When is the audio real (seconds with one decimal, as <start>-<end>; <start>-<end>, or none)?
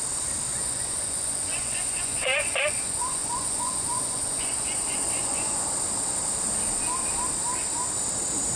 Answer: 0.0-0.5; 5.7-8.6